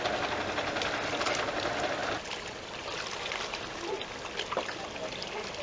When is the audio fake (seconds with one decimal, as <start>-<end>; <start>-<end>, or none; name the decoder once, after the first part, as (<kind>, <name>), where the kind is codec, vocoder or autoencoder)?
none